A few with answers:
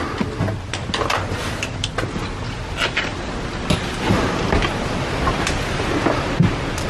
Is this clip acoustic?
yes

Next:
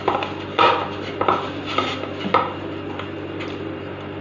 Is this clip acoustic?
yes